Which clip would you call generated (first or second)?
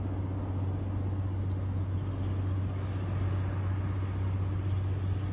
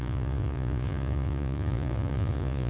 second